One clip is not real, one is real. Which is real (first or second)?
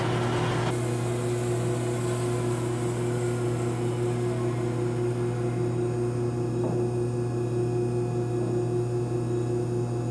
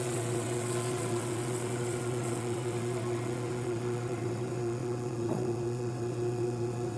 first